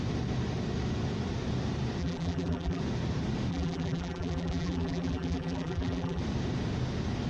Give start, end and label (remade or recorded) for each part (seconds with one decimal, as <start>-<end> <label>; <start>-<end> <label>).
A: 0.0-2.0 recorded; 2.0-2.8 remade; 2.8-3.5 recorded; 3.5-6.2 remade; 6.2-7.3 recorded